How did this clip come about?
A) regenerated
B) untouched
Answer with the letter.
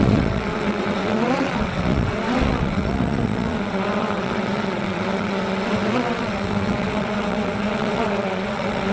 A